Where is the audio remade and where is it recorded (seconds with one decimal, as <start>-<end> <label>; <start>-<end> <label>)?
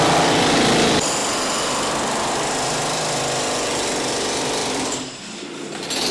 0.0-1.2 recorded; 1.2-1.9 remade; 1.9-4.6 recorded; 4.6-5.2 remade; 5.2-6.1 recorded